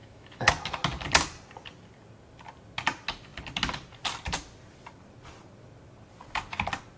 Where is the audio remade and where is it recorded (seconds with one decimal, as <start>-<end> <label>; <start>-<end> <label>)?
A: 0.0-0.5 remade; 0.5-7.0 recorded